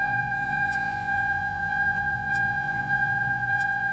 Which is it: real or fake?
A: fake